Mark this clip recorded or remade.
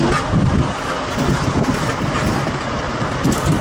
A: recorded